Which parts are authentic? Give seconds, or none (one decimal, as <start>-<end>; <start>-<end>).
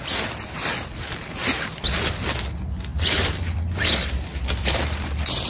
0.0-1.4; 2.1-2.9; 4.6-5.5